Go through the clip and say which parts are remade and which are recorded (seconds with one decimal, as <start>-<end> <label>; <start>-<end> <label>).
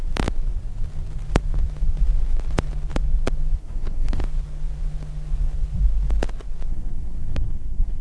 0.0-3.6 recorded; 3.6-4.2 remade; 4.2-6.7 recorded; 6.7-8.0 remade